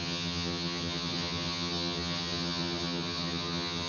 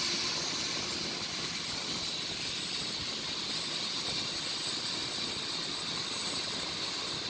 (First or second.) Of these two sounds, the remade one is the first